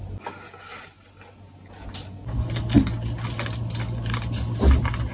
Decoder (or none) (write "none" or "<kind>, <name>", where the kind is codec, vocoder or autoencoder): none